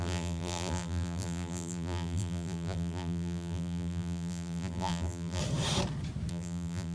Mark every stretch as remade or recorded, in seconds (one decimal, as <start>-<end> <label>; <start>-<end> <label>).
0.0-5.4 remade; 5.4-6.3 recorded; 6.3-6.9 remade